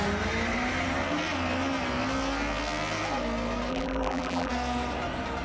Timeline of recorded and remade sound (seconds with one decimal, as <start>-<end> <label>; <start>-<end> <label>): 0.0-3.7 recorded; 3.7-4.5 remade; 4.5-5.4 recorded